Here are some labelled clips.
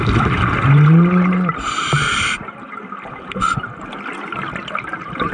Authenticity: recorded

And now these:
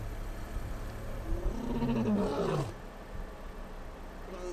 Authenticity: recorded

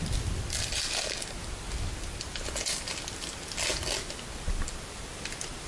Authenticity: recorded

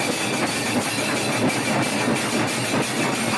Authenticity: recorded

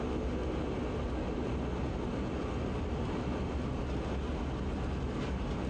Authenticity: recorded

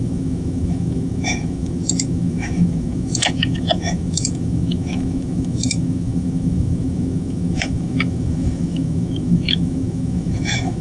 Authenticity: remade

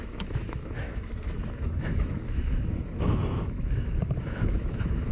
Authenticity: remade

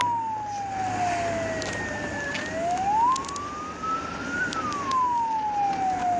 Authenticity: recorded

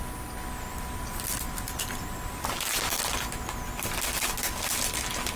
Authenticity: recorded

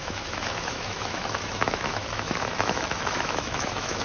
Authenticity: remade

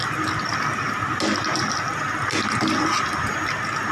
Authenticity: recorded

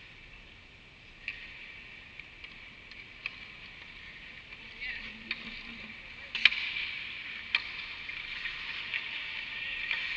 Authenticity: recorded